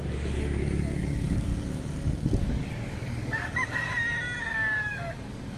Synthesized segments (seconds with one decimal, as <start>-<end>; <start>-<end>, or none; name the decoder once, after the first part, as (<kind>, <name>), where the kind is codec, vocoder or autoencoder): 0.0-1.5 (codec, DAC); 2.4-3.9; 4.5-5.6